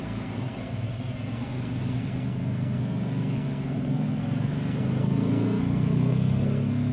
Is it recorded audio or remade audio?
remade